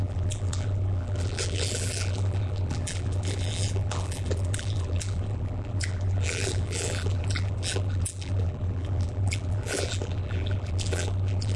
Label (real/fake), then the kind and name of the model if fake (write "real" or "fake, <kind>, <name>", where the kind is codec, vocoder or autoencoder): fake, vocoder, BigVGAN v2